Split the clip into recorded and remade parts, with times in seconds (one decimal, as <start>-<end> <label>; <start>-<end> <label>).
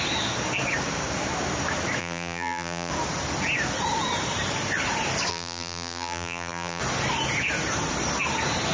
0.0-2.0 recorded; 2.0-2.9 remade; 2.9-5.3 recorded; 5.3-6.8 remade; 6.8-8.7 recorded